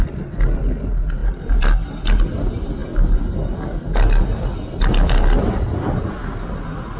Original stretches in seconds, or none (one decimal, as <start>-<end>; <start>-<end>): 0.0-7.0